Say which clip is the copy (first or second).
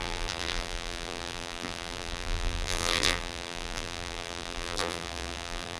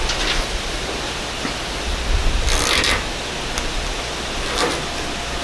first